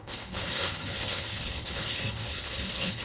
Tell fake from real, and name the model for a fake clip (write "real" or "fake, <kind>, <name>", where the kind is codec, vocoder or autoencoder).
fake, codec, HILCodec